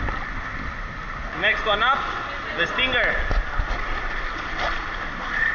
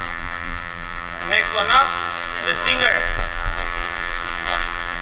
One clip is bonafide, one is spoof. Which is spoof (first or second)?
second